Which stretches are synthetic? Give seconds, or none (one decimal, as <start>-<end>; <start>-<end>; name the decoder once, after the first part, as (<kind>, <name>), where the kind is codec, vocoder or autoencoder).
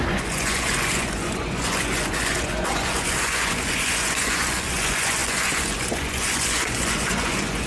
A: 0.0-7.7 (vocoder, Vocos)